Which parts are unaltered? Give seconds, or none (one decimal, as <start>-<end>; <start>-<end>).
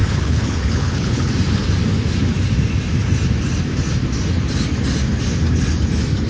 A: 1.3-6.3